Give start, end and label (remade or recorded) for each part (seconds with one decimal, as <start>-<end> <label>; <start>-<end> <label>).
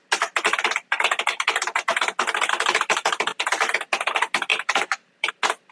0.0-4.5 recorded; 4.5-5.3 remade; 5.3-5.7 recorded